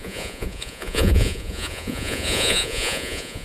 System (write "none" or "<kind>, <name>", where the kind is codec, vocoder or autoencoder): vocoder, Vocos